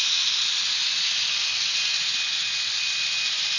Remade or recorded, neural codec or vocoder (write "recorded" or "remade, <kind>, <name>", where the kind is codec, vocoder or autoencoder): recorded